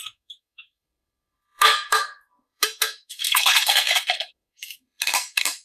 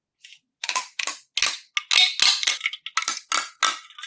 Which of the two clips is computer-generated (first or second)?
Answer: first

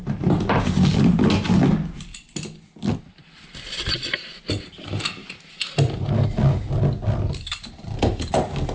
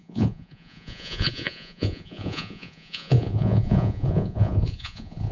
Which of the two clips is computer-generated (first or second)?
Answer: second